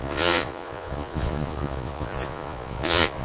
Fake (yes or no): yes